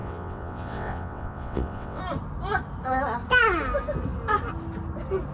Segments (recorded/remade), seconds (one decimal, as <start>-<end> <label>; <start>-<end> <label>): 0.0-2.0 remade; 2.0-5.3 recorded